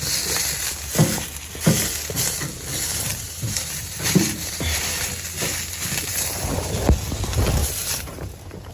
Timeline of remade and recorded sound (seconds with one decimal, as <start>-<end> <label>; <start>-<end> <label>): 0.0-3.1 recorded; 3.1-5.1 remade; 5.1-6.1 recorded; 6.1-6.7 remade; 6.7-7.6 recorded; 7.6-8.7 remade